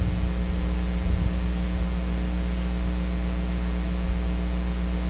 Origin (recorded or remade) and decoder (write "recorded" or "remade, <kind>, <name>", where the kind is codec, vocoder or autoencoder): recorded